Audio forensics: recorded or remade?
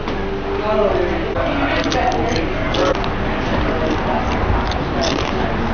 recorded